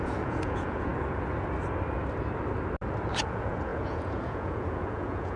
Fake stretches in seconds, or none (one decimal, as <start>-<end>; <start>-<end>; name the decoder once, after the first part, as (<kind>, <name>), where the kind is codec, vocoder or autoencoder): 0.0-0.9 (vocoder, Vocos); 3.2-5.4